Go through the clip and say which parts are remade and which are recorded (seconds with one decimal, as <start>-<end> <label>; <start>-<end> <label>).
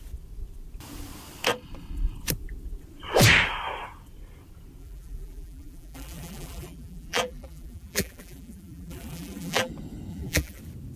0.0-4.8 recorded; 4.8-9.7 remade; 9.7-10.1 recorded; 10.1-10.6 remade; 10.6-11.0 recorded